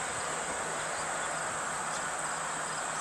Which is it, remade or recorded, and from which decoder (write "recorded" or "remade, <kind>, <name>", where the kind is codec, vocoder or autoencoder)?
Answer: recorded